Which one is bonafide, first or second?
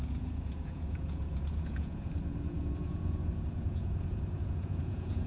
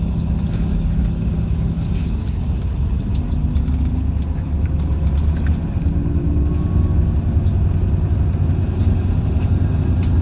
second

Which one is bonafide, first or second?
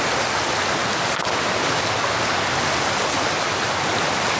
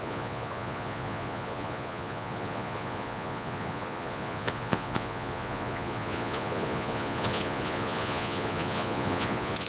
first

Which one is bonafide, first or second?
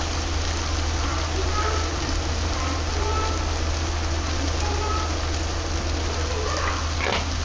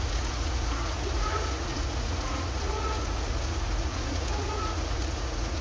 first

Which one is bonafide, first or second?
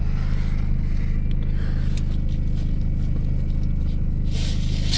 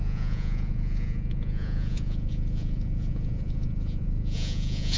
first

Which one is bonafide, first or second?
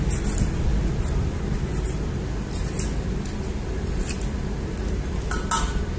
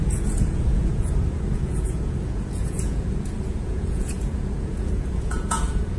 first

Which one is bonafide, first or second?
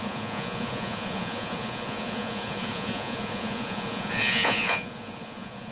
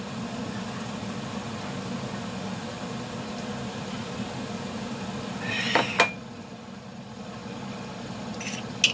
second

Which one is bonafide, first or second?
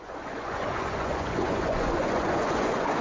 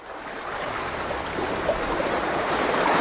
second